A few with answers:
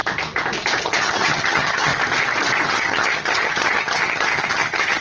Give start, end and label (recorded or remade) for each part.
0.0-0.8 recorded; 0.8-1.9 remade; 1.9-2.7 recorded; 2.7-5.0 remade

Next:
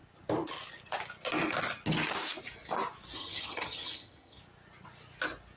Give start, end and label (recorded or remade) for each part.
0.0-3.2 recorded; 3.2-4.4 remade; 4.4-5.6 recorded

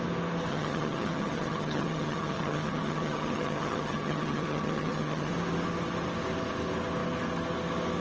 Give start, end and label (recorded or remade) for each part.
0.0-0.5 recorded; 0.5-5.3 remade; 5.3-8.0 recorded